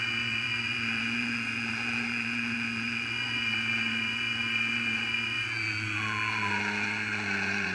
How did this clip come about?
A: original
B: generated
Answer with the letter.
B